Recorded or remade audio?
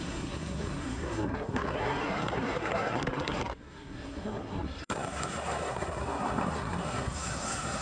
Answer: remade